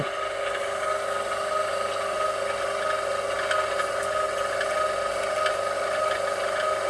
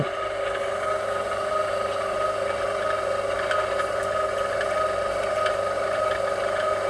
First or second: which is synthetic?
second